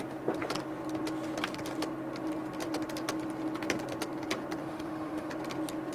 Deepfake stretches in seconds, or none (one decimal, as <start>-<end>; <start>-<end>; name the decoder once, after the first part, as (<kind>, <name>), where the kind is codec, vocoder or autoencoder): 4.6-5.3 (autoencoder, DAC-VAE)